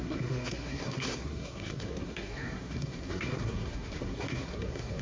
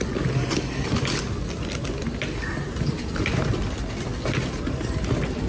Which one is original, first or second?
second